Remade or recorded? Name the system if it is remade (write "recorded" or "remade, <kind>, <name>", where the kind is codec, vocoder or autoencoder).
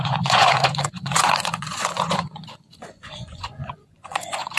remade, vocoder, Vocos